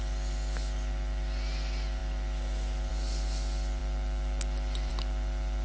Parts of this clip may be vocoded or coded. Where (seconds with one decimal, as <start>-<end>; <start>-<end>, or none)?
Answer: none